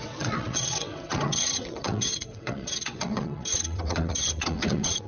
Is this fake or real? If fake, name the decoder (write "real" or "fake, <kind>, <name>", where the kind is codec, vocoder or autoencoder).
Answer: fake, vocoder, WaveNeXt